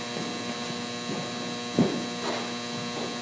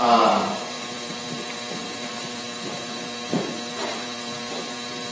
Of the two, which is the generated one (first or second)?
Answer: second